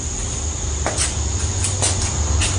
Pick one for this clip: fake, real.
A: real